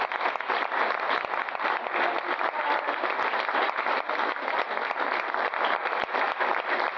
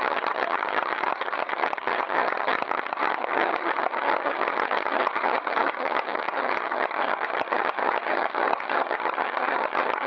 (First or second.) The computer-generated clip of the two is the second